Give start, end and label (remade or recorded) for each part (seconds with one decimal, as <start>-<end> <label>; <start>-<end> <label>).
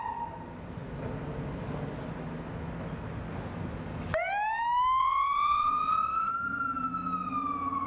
0.0-5.0 recorded; 5.0-6.3 remade; 6.3-7.9 recorded